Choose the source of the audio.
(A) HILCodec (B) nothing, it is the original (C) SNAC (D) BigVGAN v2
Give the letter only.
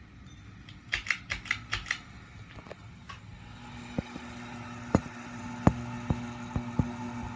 B